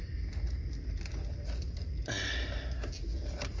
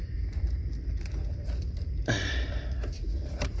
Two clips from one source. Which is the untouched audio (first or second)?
first